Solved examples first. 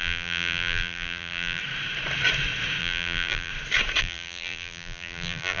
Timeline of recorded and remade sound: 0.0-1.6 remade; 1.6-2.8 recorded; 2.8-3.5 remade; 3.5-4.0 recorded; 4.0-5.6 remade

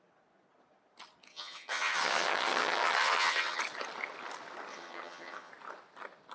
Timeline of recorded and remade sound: 0.0-1.3 recorded; 1.3-3.6 remade; 3.6-4.7 recorded; 4.7-5.5 remade; 5.5-6.3 recorded

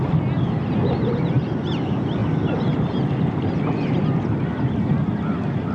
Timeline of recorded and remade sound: 0.0-5.7 recorded